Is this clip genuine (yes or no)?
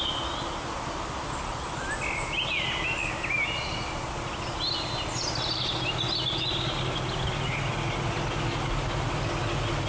yes